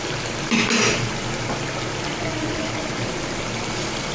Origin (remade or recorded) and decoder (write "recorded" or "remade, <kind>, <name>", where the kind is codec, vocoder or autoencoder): recorded